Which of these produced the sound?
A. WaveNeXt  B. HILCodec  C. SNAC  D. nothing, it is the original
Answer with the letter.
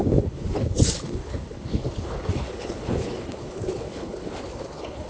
B